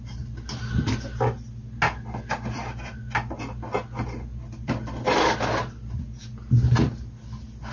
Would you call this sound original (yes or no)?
yes